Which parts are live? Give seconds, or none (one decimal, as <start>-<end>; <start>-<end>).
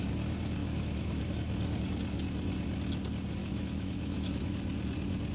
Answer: 0.0-0.6; 1.3-3.4; 4.5-5.3